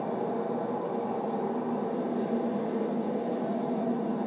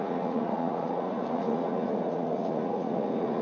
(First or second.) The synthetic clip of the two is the second